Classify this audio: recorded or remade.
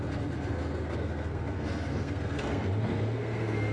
remade